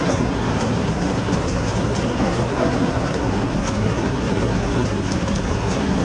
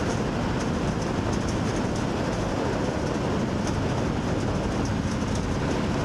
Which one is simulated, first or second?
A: first